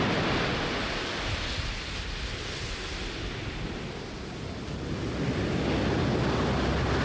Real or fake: real